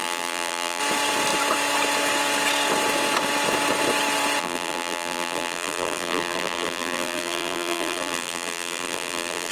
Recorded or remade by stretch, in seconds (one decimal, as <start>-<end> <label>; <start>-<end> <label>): 0.0-0.8 remade; 0.8-4.4 recorded; 4.4-9.5 remade